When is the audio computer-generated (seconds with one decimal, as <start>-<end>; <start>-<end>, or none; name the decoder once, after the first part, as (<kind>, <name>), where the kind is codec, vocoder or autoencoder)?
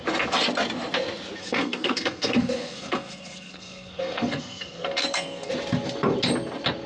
1.4-5.5 (codec, SNAC)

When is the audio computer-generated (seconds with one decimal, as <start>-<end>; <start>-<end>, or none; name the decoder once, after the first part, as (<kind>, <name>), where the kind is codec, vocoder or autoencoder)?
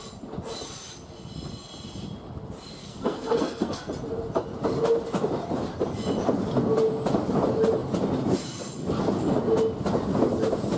2.8-3.9 (codec, SNAC)